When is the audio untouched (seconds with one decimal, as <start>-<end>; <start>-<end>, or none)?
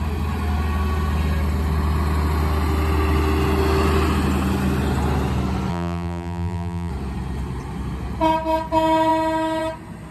0.0-5.7; 6.9-10.1